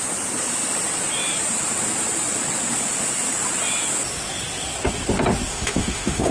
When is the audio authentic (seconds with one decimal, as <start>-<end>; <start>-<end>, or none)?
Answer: 0.0-5.5